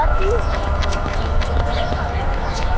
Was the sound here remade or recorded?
remade